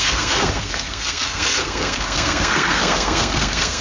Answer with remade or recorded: remade